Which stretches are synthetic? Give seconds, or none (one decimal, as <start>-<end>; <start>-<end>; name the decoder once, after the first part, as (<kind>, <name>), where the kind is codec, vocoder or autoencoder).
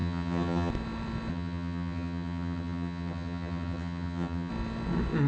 0.0-0.7 (vocoder, HiFi-GAN); 1.3-4.5